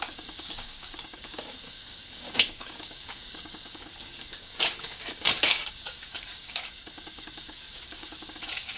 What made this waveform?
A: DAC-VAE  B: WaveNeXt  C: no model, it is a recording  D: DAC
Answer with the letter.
D